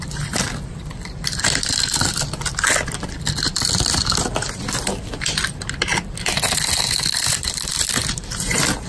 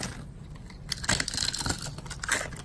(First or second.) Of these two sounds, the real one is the second